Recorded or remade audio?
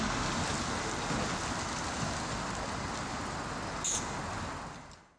recorded